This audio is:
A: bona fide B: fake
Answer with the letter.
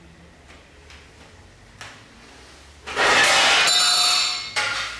A